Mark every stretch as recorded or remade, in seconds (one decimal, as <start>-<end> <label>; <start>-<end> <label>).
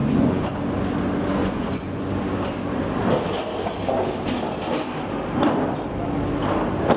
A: 0.0-0.5 remade; 0.5-1.4 recorded; 1.4-2.1 remade; 2.1-7.0 recorded